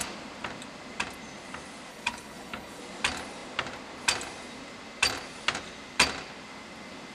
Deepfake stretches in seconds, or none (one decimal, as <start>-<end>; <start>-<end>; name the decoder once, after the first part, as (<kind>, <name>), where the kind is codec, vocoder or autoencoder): 1.9-2.8 (codec, HILCodec)